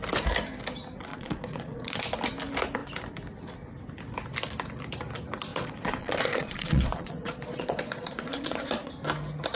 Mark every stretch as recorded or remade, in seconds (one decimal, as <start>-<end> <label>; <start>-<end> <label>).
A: 0.0-1.1 recorded; 1.1-2.0 remade; 2.0-5.5 recorded; 5.5-8.9 remade; 8.9-9.6 recorded